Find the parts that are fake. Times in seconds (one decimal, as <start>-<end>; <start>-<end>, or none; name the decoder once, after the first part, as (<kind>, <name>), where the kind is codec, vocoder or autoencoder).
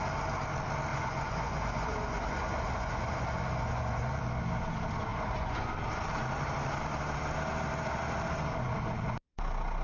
0.9-4.2 (vocoder, Vocos); 5.1-5.7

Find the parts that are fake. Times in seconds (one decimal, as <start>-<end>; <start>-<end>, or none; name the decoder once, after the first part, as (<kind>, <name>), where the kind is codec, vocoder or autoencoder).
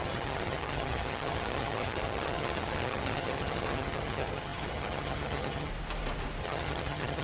0.0-5.7 (vocoder, HiFi-GAN); 6.4-7.2